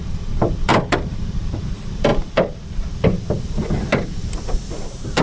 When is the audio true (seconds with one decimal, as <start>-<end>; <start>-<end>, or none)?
none